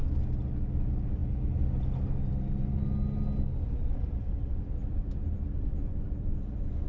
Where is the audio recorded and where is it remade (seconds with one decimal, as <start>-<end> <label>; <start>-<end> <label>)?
0.0-6.9 recorded